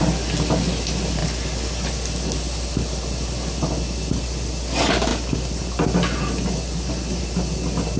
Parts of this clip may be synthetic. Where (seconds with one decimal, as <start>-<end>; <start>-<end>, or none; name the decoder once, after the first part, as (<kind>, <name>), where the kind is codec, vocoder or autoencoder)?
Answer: none